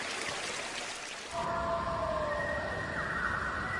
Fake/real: real